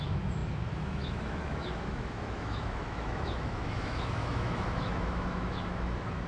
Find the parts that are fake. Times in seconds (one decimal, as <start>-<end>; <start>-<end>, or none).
0.0-6.3